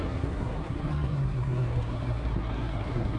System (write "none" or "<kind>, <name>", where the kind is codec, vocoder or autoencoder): codec, SNAC